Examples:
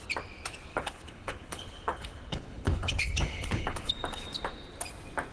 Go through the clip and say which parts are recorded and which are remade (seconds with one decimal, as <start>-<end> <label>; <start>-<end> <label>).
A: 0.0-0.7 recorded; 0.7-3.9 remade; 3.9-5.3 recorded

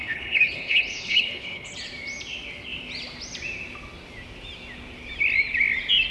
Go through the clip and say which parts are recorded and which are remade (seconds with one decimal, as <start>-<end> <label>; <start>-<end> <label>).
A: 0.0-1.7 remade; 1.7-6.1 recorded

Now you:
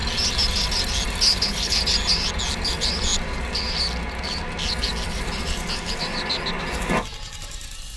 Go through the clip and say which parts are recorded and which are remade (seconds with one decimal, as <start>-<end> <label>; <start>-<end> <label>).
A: 0.0-1.3 recorded; 1.3-1.8 remade; 1.8-8.0 recorded

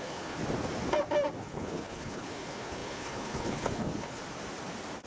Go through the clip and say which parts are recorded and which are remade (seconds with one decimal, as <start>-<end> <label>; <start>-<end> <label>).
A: 0.0-0.4 remade; 0.4-1.4 recorded; 1.4-4.2 remade; 4.2-5.1 recorded